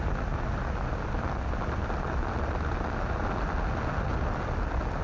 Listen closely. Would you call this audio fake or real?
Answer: real